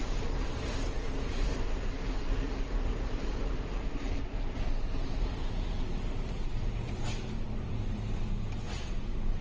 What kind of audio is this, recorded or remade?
remade